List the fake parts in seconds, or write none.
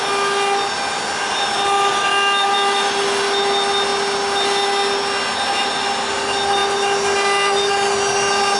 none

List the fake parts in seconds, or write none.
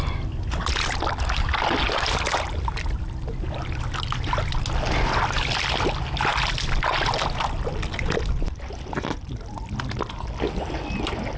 none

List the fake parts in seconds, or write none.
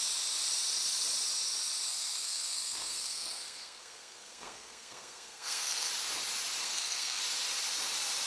1.9-5.9 (codec, SNAC); 6.6-7.2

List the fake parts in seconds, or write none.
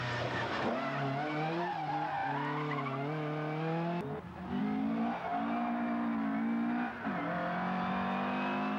none